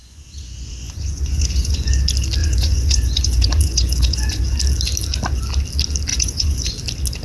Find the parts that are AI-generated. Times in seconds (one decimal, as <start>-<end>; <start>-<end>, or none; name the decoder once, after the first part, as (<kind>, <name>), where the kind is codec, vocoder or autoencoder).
0.0-1.9 (vocoder, Vocos); 2.4-4.4; 6.1-6.7